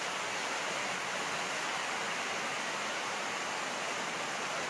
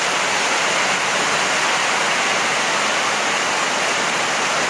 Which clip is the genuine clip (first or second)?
second